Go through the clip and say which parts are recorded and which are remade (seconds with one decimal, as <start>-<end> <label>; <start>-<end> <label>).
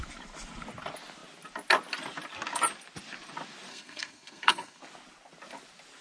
0.0-3.7 recorded; 3.7-4.8 remade; 4.8-6.0 recorded